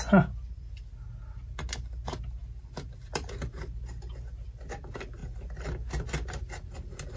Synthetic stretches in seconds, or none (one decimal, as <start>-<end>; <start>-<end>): none